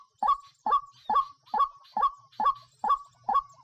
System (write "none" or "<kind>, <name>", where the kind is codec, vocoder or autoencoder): none